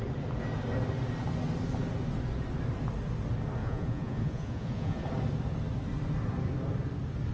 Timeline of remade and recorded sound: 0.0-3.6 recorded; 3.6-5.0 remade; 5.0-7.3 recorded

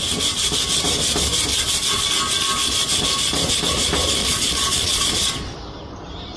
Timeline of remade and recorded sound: 0.0-1.5 recorded; 1.5-2.0 remade; 2.0-4.2 recorded; 4.2-5.0 remade; 5.0-6.4 recorded

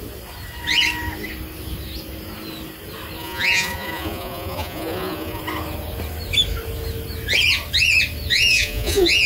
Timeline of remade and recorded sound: 0.0-3.2 recorded; 3.2-5.4 remade; 5.4-8.3 recorded; 8.3-9.3 remade

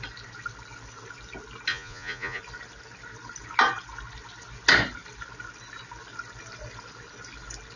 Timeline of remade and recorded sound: 0.0-1.7 recorded; 1.7-2.4 remade; 2.4-7.8 recorded

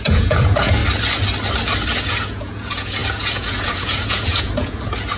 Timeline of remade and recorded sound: 0.0-0.8 remade; 0.8-2.0 recorded; 2.0-5.2 remade

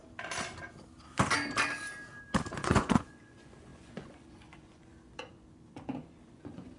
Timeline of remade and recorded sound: 0.0-2.5 recorded; 2.5-6.8 remade